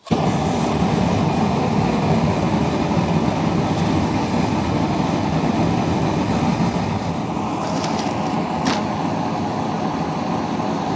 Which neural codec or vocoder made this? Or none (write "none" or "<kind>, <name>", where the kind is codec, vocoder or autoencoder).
vocoder, BigVGAN v2